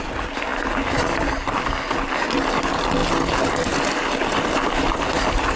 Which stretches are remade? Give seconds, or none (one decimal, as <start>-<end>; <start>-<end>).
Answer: none